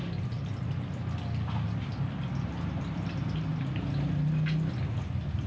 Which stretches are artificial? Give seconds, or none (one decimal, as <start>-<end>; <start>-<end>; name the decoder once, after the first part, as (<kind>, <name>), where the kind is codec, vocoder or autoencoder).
none